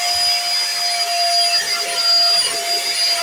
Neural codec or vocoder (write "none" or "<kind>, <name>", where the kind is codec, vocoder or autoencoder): none